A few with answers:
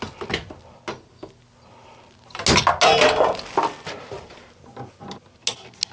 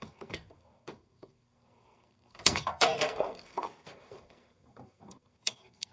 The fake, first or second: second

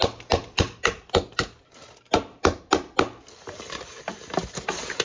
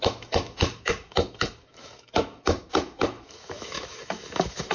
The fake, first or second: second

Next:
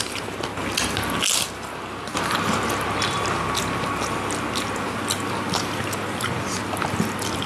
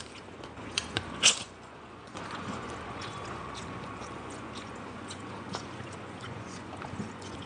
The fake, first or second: second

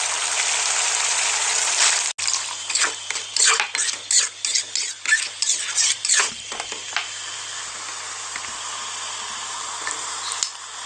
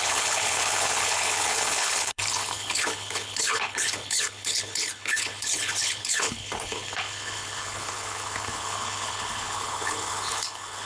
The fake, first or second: second